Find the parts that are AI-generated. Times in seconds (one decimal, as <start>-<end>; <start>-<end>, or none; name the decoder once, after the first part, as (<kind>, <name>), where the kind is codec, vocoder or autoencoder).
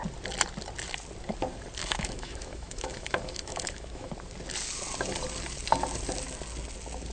1.8-4.1 (autoencoder, DAC-VAE)